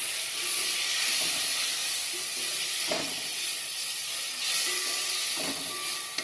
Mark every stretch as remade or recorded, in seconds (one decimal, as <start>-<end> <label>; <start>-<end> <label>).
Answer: 0.0-1.1 remade; 1.1-2.6 recorded; 2.6-3.8 remade; 3.8-6.2 recorded